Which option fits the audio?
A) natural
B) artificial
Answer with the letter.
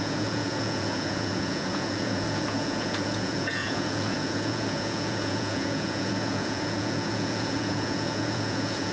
B